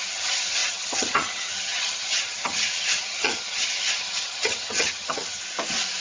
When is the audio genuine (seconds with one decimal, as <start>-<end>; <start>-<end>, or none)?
5.4-6.0